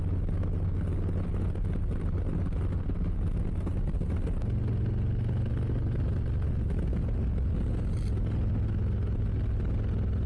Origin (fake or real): real